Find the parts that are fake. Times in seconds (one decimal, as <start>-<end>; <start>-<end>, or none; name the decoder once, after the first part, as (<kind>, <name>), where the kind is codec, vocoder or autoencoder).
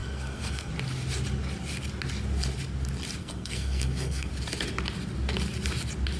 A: 0.0-0.7 (codec, SNAC); 3.2-4.3